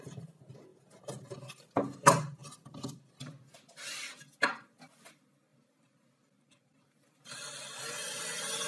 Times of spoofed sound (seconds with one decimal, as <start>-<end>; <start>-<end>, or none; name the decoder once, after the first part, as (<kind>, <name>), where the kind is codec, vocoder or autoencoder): 0.7-1.7 (vocoder, BigVGAN v2); 2.4-3.5; 5.5-7.8